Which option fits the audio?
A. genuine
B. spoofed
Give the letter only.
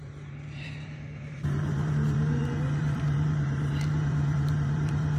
B